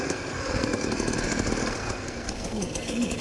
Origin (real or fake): fake